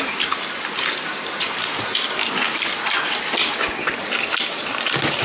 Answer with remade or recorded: recorded